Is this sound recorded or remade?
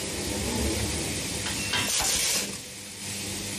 recorded